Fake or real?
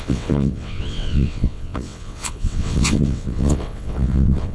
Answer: fake